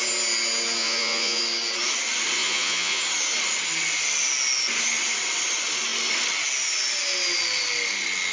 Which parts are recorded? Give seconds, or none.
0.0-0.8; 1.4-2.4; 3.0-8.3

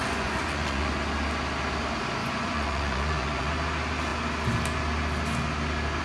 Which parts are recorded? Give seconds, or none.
0.9-2.2; 3.5-6.0

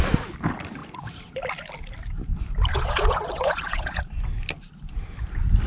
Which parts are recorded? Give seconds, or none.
0.0-2.7; 4.1-5.7

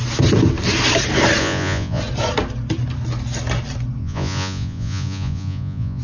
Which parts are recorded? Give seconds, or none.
0.0-1.4; 2.0-4.0

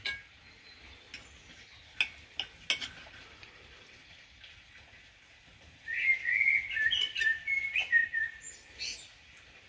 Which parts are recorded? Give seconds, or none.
0.0-9.7

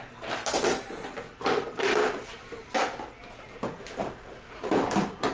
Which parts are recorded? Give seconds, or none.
0.0-5.3

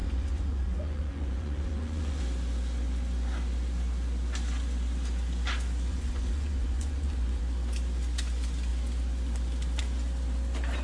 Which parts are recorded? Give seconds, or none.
2.2-5.9; 7.4-10.8